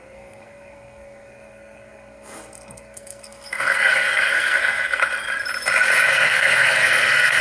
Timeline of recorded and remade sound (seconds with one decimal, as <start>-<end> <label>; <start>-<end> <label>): 0.0-5.0 remade; 5.0-6.1 recorded; 6.1-7.4 remade